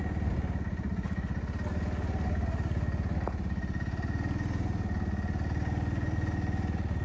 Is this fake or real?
real